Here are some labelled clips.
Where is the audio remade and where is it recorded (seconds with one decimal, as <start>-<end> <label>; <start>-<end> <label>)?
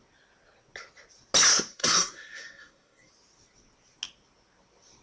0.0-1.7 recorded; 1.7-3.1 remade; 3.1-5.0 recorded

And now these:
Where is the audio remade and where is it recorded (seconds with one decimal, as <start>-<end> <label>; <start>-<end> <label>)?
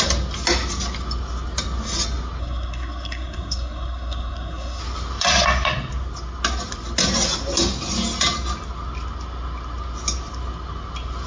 0.0-2.4 recorded; 2.4-4.8 remade; 4.8-11.3 recorded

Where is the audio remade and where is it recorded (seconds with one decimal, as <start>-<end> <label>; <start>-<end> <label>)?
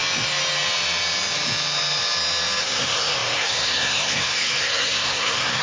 0.0-2.6 recorded; 2.6-5.6 remade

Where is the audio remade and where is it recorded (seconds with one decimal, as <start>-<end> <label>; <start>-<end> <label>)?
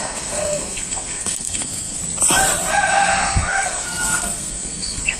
0.0-2.0 remade; 2.0-2.7 recorded; 2.7-5.2 remade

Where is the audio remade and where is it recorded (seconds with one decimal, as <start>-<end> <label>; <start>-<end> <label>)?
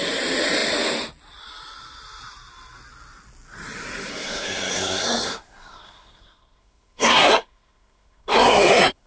0.0-4.1 recorded; 4.1-9.1 remade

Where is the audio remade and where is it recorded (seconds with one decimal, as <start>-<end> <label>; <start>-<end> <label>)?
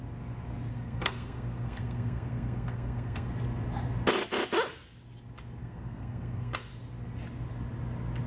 0.0-0.7 recorded; 0.7-3.3 remade; 3.3-5.6 recorded; 5.6-6.7 remade; 6.7-8.3 recorded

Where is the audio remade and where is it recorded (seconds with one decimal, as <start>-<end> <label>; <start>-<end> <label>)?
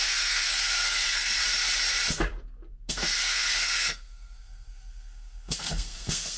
0.0-1.4 remade; 1.4-2.9 recorded; 2.9-6.4 remade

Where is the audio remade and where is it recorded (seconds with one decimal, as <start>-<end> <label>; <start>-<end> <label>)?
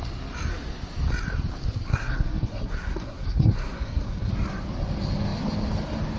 0.0-1.9 recorded; 1.9-4.3 remade; 4.3-6.2 recorded